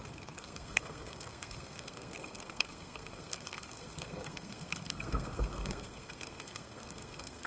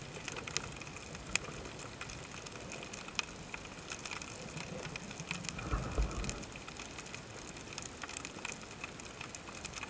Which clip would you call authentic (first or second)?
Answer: second